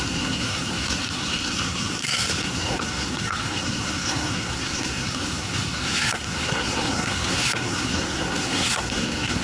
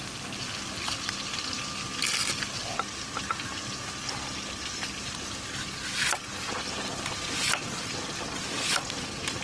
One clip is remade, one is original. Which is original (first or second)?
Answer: second